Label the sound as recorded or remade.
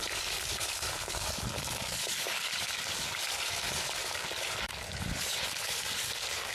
remade